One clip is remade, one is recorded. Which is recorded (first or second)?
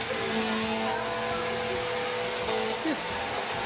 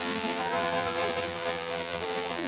first